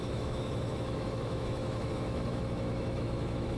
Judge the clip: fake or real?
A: fake